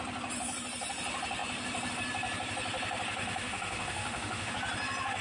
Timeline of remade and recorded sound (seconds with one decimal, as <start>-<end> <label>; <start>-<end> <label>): 0.0-3.2 recorded; 3.2-4.5 remade; 4.5-5.2 recorded